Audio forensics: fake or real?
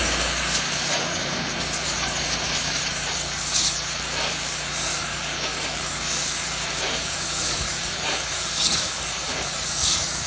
fake